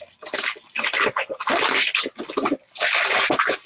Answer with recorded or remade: recorded